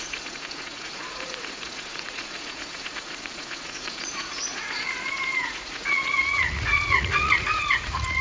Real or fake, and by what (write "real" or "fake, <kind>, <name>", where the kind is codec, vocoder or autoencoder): fake, vocoder, Vocos